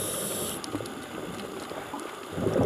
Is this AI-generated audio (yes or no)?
no